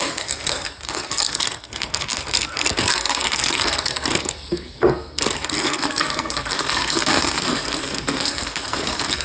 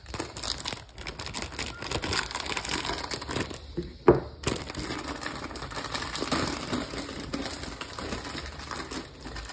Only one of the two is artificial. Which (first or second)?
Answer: first